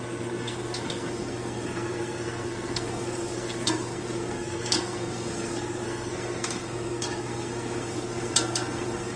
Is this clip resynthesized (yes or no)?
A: yes